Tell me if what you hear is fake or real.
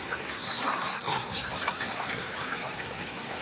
fake